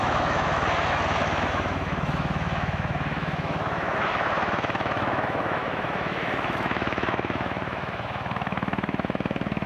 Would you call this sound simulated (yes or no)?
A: yes